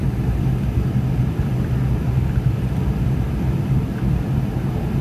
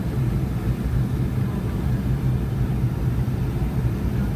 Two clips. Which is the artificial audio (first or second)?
first